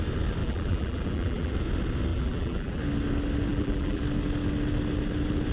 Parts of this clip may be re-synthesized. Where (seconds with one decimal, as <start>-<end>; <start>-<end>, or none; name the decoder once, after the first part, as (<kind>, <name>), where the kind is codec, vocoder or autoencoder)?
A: 0.4-1.5 (vocoder, BigVGAN v2); 2.1-2.8; 3.5-4.0